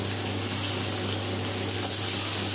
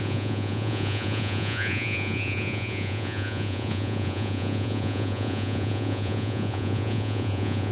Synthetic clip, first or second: second